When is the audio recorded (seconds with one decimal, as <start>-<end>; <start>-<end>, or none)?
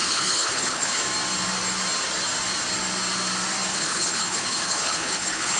1.0-3.7